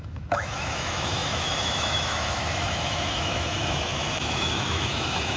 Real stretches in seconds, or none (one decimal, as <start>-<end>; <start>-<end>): none

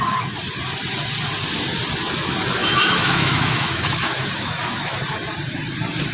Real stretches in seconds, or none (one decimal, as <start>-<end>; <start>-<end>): 0.0-2.6; 4.9-6.1